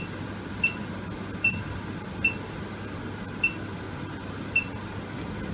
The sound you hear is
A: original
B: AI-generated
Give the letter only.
A